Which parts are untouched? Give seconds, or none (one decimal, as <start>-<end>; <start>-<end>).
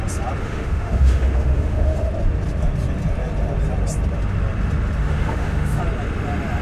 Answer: 0.0-0.4; 2.1-5.0; 5.8-6.6